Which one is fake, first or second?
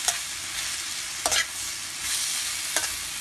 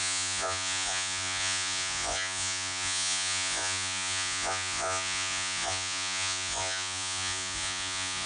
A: second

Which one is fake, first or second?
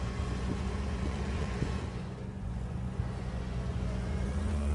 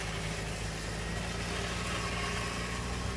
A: first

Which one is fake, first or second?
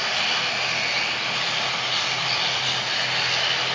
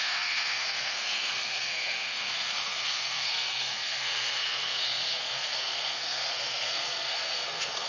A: second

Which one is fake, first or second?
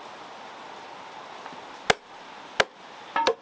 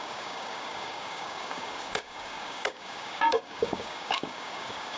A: second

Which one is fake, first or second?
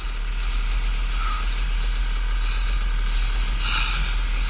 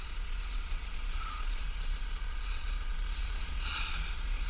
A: second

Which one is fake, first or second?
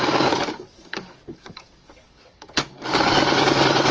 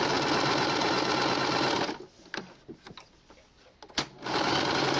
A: first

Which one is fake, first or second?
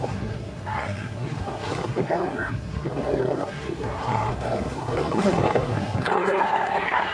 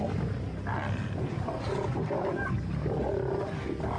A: first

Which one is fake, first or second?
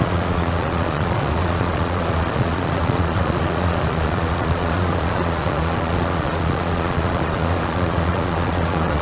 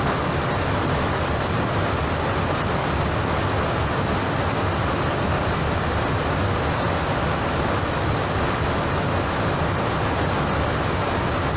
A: first